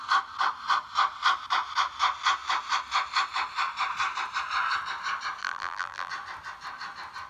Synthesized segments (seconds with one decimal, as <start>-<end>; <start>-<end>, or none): 5.4-6.1